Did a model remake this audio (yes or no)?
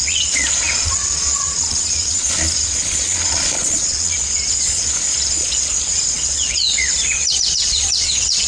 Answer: yes